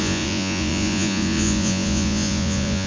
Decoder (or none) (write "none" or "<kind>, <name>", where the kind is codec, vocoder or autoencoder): vocoder, Vocos